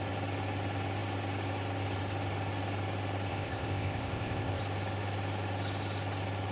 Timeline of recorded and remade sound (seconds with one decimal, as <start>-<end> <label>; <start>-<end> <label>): 0.0-3.3 recorded; 3.3-4.6 remade; 4.6-6.5 recorded